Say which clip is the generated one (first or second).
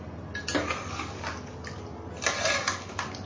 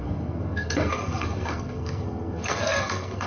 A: second